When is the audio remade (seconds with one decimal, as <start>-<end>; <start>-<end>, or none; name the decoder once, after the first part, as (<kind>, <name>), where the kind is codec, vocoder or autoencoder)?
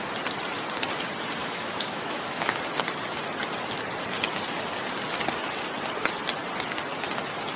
1.4-2.6 (autoencoder, DAC-VAE)